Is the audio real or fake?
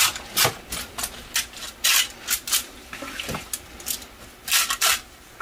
real